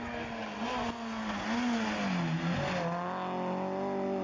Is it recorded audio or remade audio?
recorded